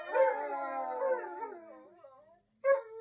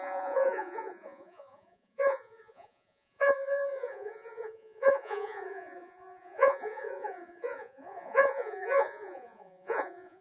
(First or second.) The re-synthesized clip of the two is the second